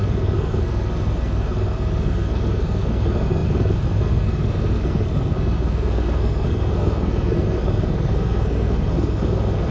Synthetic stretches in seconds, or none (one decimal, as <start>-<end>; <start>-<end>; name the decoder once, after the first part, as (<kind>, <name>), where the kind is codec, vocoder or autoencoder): 0.0-9.7 (codec, SNAC)